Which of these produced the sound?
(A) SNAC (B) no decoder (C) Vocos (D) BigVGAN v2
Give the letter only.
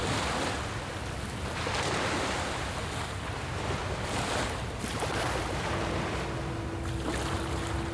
B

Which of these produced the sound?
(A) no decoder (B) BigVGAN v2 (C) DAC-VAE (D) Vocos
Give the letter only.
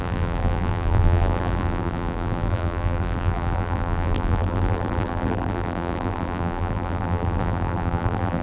B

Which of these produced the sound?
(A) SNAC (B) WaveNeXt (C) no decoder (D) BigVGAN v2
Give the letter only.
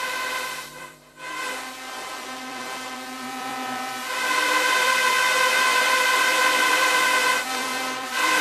D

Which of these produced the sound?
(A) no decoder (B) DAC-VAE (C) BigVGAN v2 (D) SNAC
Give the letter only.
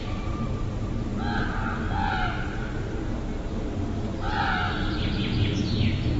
A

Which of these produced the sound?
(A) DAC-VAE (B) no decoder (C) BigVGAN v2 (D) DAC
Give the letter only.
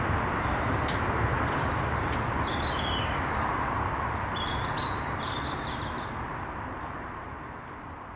C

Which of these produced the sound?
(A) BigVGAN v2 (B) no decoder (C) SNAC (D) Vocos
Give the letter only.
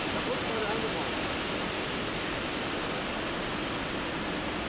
B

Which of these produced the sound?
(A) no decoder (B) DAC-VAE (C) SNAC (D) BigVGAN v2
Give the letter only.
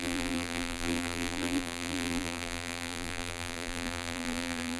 D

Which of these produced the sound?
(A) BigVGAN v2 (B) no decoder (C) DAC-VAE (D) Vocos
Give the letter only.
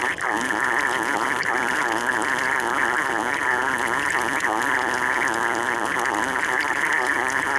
B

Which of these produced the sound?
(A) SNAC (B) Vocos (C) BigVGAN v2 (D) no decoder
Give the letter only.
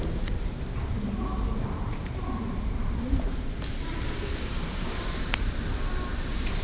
C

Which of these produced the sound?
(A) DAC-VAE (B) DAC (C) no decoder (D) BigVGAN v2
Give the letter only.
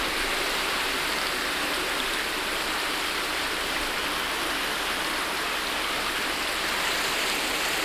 D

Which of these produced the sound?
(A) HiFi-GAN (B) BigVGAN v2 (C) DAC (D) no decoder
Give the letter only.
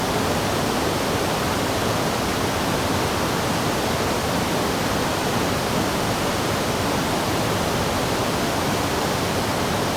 B